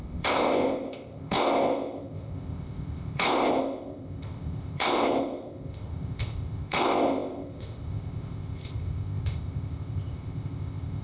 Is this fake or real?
fake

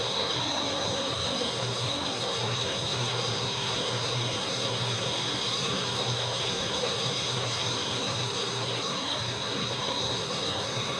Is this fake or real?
fake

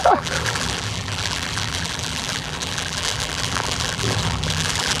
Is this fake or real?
fake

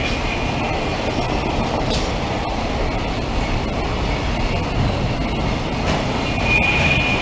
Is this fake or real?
real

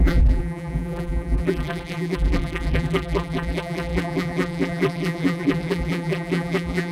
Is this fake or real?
fake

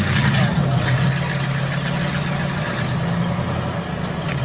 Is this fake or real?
real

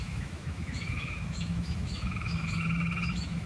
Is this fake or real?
fake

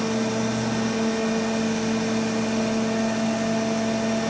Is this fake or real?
real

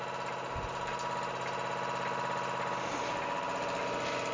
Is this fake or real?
real